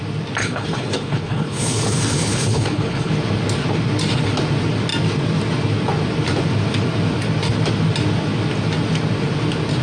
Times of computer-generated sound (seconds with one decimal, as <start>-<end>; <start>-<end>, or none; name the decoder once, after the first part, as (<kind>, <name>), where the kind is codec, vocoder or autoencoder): 0.4-3.1 (codec, HILCodec)